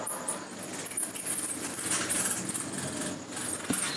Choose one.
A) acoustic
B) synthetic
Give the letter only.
A